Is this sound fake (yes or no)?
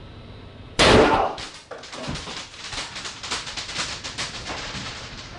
yes